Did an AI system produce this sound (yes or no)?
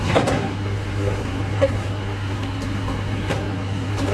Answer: yes